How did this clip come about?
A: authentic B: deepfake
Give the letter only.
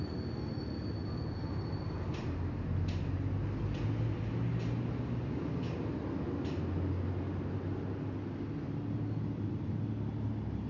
A